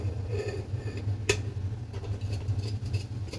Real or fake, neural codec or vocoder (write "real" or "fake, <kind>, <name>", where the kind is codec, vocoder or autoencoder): real